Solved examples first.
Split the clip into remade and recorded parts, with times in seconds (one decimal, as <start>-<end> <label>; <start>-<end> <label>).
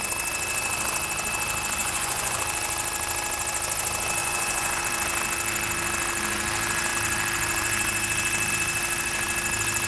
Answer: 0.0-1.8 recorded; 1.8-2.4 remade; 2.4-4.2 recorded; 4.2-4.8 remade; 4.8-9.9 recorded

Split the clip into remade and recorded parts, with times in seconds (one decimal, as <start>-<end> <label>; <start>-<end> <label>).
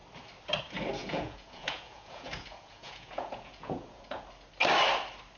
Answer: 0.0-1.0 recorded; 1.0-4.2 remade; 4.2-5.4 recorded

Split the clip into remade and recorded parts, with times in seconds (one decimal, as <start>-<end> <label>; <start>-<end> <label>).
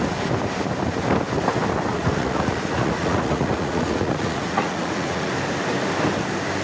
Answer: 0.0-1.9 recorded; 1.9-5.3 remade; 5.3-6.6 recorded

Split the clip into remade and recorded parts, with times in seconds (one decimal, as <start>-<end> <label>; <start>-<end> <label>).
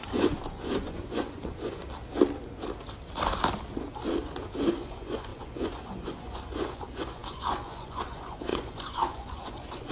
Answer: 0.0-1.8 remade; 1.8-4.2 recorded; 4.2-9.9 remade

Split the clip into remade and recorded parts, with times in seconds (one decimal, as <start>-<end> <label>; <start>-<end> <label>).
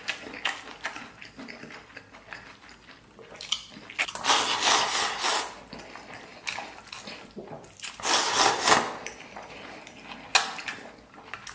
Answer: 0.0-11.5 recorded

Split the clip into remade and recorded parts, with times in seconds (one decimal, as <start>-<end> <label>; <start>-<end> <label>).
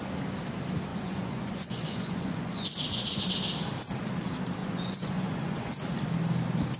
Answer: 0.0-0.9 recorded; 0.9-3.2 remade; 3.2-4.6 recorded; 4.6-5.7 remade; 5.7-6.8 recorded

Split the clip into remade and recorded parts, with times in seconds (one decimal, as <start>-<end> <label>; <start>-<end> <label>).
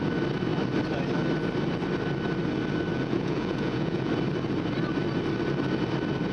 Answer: 0.0-2.9 recorded; 2.9-4.1 remade; 4.1-6.3 recorded